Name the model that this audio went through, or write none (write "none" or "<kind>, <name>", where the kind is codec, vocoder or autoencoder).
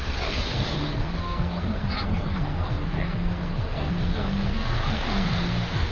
codec, SNAC